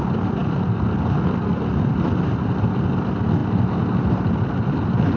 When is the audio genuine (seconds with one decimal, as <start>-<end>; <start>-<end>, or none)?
0.0-5.2